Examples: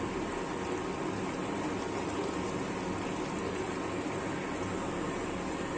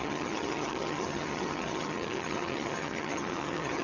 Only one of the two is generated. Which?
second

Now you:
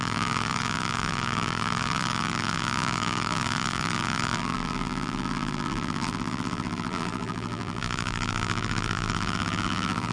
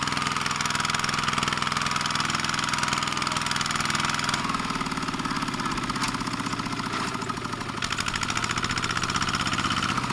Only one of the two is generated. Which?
first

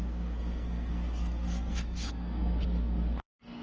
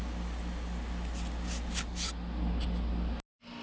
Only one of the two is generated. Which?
first